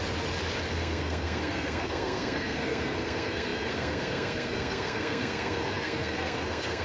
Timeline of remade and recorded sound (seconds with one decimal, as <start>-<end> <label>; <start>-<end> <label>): 0.0-0.7 recorded; 0.7-6.8 remade